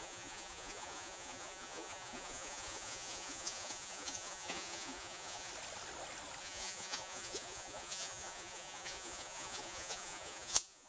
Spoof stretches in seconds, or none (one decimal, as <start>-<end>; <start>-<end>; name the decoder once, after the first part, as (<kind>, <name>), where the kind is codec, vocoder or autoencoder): 0.0-5.5 (vocoder, Vocos); 6.4-10.9